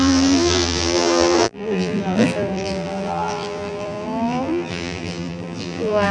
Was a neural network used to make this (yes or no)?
yes